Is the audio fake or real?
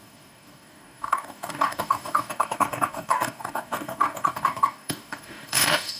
fake